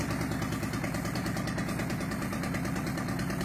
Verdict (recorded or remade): remade